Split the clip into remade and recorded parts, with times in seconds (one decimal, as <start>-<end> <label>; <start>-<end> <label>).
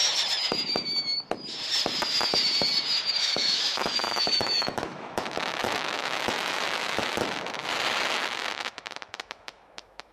0.0-3.2 recorded; 3.2-7.6 remade; 7.6-8.1 recorded; 8.1-10.1 remade